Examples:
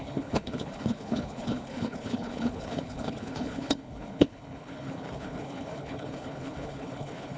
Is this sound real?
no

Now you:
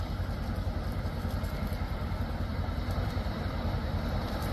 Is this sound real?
no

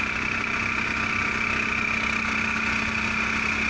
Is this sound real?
yes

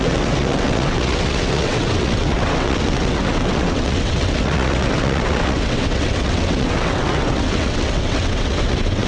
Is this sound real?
no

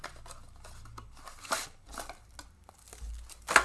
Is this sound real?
yes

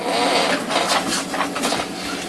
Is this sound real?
yes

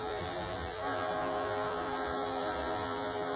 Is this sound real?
no